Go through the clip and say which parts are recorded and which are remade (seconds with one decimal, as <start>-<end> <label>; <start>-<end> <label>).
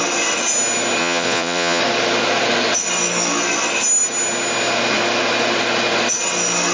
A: 0.0-1.0 recorded; 1.0-1.8 remade; 1.8-6.7 recorded